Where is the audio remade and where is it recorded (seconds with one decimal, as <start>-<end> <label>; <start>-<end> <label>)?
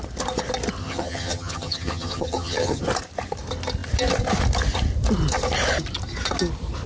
0.0-0.8 recorded; 0.8-2.8 remade; 2.8-6.9 recorded